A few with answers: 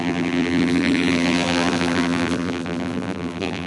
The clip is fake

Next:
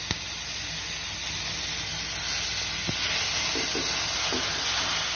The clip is real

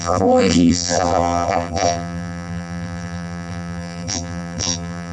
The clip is fake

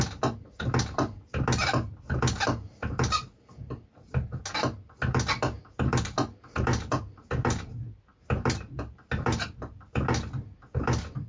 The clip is real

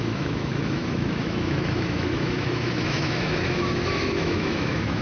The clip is fake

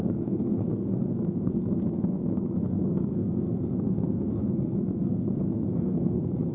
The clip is fake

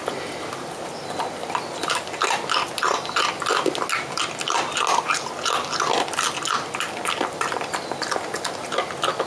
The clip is real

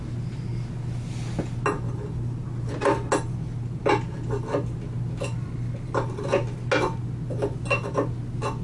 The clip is real